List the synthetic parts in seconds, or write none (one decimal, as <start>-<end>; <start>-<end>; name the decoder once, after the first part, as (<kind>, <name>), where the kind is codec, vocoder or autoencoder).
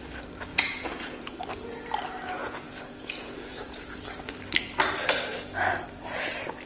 0.5-1.3 (vocoder, Vocos); 2.4-4.0